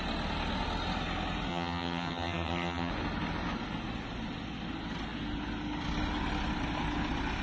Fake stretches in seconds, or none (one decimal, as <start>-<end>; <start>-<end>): 1.5-2.9